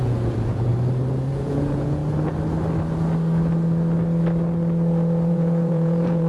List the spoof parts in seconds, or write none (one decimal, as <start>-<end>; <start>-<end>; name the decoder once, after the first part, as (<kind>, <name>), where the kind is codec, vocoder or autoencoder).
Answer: 0.0-0.7 (vocoder, Vocos); 1.3-2.0; 5.3-6.3

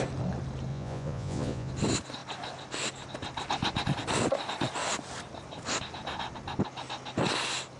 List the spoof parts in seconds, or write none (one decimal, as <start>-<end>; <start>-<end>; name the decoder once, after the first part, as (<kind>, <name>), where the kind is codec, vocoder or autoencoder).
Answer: 0.7-1.7 (vocoder, Vocos)